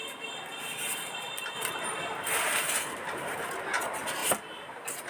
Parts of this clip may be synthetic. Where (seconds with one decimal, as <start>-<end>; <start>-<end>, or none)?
none